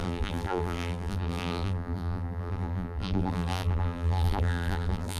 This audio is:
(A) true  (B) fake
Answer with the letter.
B